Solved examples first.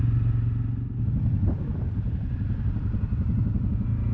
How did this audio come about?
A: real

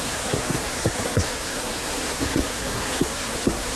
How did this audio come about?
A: fake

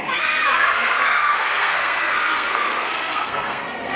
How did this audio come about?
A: fake